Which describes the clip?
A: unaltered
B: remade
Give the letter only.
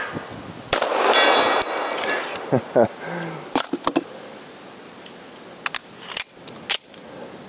A